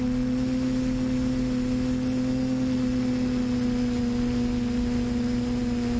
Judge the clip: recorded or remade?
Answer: recorded